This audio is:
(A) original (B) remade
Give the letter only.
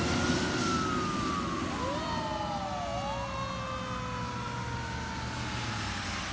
A